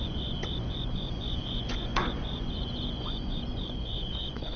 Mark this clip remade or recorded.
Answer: remade